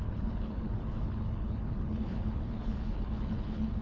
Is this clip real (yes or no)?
no